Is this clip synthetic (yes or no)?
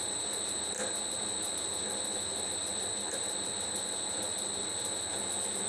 no